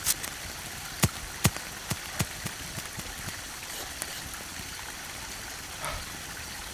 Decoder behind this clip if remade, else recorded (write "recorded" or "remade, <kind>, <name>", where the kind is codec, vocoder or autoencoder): recorded